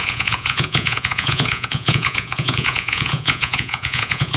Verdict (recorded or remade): remade